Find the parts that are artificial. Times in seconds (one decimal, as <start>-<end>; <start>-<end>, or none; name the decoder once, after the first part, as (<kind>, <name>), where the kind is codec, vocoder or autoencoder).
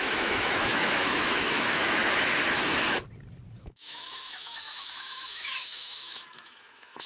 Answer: 0.0-2.0 (autoencoder, DAC-VAE); 3.6-7.1